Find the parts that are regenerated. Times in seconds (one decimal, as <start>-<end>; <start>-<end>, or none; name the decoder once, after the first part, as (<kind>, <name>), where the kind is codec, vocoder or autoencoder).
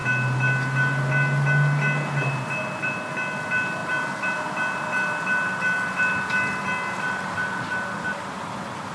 none